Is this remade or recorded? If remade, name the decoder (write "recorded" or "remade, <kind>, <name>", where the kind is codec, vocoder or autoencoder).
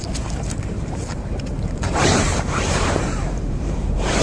remade, vocoder, BigVGAN v2